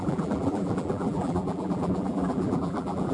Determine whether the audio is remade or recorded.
remade